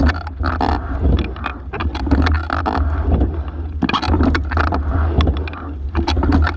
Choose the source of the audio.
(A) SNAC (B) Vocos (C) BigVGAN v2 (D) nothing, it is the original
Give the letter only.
D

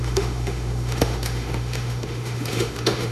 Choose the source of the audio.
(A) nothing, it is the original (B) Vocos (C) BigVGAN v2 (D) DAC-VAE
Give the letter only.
D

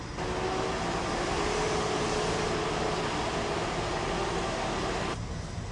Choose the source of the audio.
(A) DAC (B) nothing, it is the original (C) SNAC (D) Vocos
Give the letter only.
B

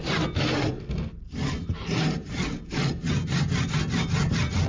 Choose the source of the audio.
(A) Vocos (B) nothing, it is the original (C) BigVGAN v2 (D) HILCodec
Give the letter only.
B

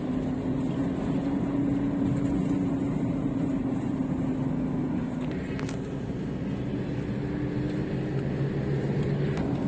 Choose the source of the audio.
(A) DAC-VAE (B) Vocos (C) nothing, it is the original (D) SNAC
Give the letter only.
C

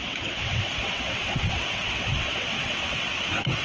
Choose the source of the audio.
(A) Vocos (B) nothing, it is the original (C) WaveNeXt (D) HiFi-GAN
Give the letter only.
C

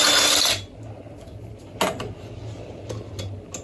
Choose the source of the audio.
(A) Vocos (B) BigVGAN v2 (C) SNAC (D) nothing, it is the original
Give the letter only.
D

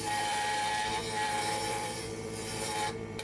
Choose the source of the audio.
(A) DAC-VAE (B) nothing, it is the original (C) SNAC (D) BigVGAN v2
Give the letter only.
D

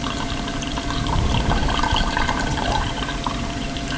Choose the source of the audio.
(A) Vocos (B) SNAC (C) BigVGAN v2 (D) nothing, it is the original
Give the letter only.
C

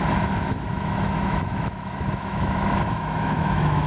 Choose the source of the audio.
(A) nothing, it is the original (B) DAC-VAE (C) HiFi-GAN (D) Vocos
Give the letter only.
B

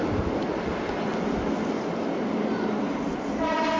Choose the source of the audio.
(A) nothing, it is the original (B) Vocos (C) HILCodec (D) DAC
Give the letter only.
A